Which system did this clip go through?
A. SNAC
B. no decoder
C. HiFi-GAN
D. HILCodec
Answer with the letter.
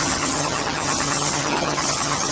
C